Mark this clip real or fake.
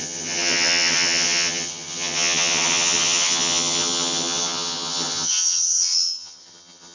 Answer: fake